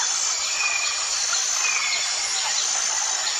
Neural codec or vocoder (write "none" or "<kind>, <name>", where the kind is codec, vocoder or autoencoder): none